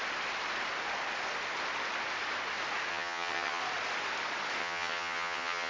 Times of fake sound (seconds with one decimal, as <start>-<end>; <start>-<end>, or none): 2.9-3.6; 4.6-5.7